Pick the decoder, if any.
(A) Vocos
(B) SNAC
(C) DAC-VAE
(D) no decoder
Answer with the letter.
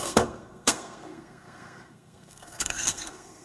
B